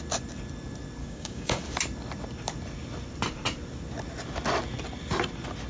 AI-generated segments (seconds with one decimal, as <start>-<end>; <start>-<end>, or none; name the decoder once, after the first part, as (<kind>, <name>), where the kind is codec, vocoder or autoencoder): 1.0-1.6 (codec, DAC)